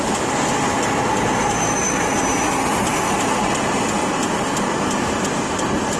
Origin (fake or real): real